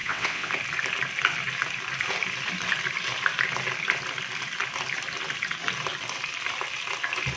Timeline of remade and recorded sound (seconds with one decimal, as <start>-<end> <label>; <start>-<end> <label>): 0.0-0.5 remade; 0.5-7.4 recorded